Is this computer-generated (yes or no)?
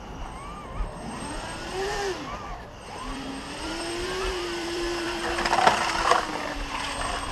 yes